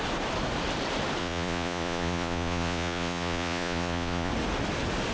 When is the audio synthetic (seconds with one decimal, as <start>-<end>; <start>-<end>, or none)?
1.2-4.3